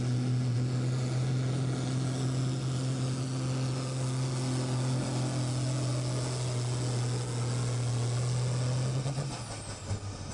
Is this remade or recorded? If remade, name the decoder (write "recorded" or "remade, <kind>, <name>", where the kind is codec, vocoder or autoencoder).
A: recorded